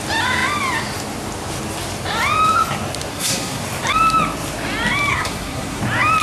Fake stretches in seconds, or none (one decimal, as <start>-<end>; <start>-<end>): 3.1-3.6; 5.1-5.8